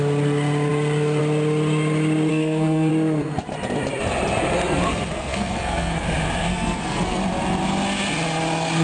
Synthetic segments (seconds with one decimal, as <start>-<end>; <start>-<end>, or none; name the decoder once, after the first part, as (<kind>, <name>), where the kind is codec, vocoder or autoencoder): 2.3-2.9 (codec, SNAC); 4.9-6.0; 6.5-7.2